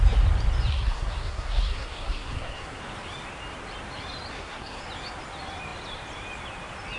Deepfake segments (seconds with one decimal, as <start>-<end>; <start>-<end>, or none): 0.7-2.8; 4.3-4.8